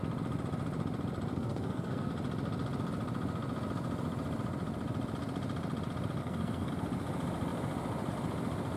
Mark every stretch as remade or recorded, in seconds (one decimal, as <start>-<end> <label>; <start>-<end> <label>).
0.0-1.3 recorded; 1.3-2.1 remade; 2.1-6.2 recorded; 6.2-6.7 remade; 6.7-8.8 recorded